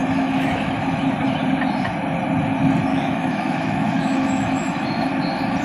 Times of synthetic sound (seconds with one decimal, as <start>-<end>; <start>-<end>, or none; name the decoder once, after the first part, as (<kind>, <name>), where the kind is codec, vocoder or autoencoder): 0.0-0.7 (autoencoder, DAC-VAE); 2.9-5.1